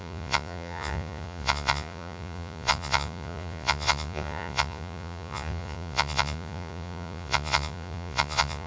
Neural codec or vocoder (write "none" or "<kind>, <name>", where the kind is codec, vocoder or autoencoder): vocoder, Vocos